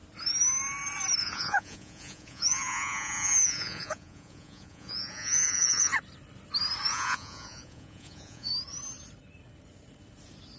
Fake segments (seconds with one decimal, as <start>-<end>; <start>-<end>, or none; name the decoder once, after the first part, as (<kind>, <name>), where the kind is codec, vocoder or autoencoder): 1.2-5.9 (vocoder, Vocos); 6.9-8.5